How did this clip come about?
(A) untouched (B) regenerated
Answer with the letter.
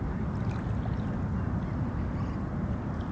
A